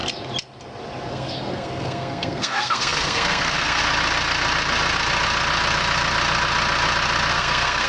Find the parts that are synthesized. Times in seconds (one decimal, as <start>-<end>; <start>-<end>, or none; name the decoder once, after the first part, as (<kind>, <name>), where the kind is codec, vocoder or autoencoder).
1.1-3.8 (codec, SNAC); 7.3-7.9